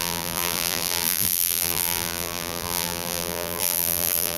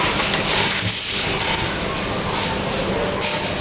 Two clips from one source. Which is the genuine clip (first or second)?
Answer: second